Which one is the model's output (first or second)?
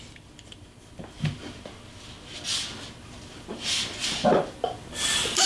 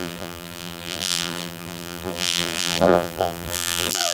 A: second